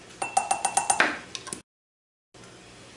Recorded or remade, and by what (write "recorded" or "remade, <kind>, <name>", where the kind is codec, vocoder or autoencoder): recorded